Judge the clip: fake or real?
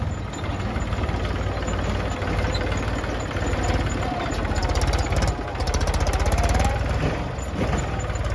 real